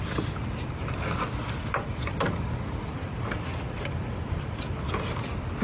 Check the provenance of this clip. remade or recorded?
recorded